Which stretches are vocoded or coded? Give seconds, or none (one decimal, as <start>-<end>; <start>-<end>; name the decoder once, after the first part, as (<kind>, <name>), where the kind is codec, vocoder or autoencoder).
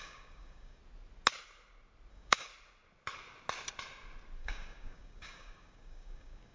0.0-0.8 (codec, DAC); 2.1-2.5; 4.4-6.5